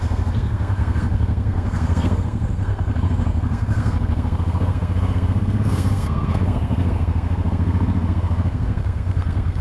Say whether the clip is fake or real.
fake